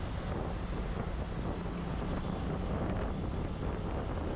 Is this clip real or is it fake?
real